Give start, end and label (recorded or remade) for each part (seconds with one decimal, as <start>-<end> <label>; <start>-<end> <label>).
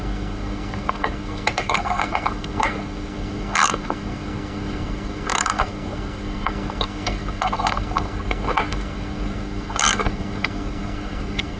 0.0-11.6 remade